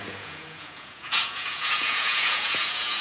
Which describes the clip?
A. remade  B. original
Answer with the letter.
A